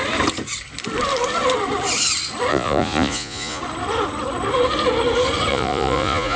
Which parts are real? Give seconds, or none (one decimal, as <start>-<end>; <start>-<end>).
0.0-2.5; 3.6-5.5